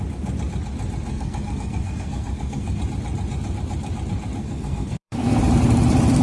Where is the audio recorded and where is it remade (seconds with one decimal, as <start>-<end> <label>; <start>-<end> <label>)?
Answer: 0.0-1.1 recorded; 1.1-2.8 remade; 2.8-4.4 recorded; 4.4-5.4 remade; 5.4-6.2 recorded